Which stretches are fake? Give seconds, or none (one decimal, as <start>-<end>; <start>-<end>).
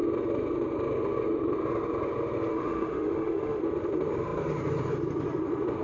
2.5-3.6